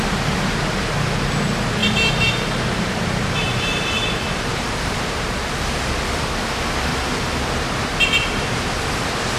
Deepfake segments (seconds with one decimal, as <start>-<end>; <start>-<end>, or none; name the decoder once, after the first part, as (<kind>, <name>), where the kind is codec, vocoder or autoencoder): 1.8-5.4 (vocoder, BigVGAN v2); 6.9-7.4